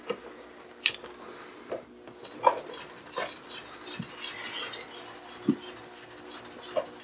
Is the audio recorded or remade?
recorded